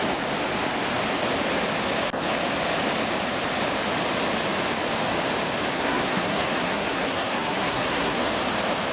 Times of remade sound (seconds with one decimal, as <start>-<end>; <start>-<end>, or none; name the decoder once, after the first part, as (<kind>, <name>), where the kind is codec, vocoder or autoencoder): 5.7-8.3 (codec, SNAC)